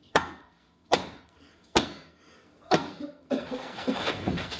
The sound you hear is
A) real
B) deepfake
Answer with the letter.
B